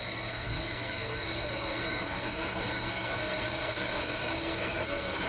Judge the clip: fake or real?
fake